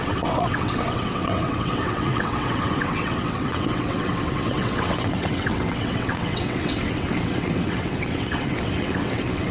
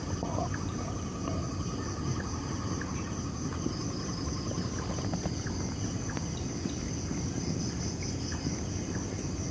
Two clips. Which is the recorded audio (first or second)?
second